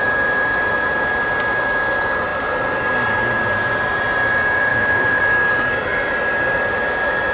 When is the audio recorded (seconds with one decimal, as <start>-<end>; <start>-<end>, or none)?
0.0-4.7; 5.2-7.3